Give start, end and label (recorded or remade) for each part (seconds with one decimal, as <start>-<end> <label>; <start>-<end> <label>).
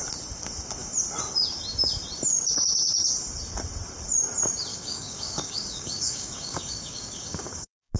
0.0-4.7 recorded; 4.7-8.0 remade